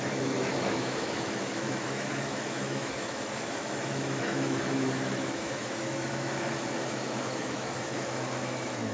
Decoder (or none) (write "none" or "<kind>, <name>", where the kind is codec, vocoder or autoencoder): autoencoder, DAC-VAE